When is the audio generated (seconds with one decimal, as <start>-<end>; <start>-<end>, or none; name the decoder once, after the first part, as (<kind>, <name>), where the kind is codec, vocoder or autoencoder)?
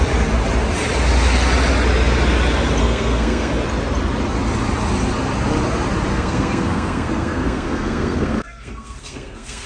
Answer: 2.8-3.5 (codec, SNAC); 6.1-9.7